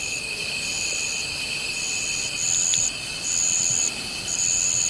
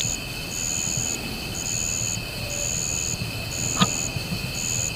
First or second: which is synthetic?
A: first